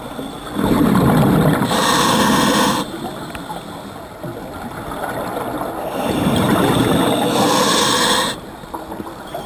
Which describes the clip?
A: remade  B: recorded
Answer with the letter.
B